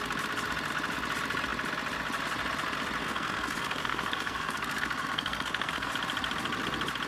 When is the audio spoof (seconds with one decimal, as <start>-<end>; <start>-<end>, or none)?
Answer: 3.0-5.9